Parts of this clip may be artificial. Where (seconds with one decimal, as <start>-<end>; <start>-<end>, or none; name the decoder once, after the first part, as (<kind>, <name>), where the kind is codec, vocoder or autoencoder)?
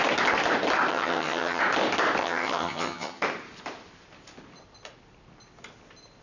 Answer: 0.9-1.6 (vocoder, HiFi-GAN); 2.2-3.2